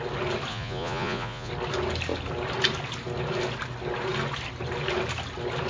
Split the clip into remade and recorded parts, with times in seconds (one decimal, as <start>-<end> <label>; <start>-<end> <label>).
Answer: 0.0-0.5 recorded; 0.5-1.5 remade; 1.5-5.7 recorded